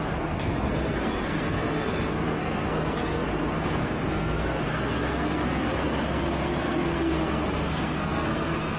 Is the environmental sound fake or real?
fake